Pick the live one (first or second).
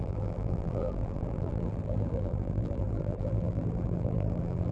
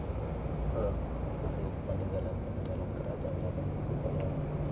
second